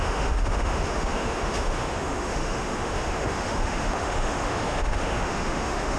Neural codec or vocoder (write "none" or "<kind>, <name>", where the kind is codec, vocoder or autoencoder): autoencoder, DAC-VAE